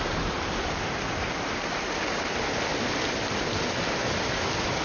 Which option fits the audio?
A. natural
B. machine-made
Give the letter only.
A